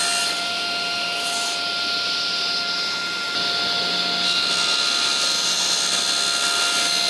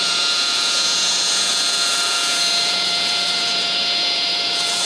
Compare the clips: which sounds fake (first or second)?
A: second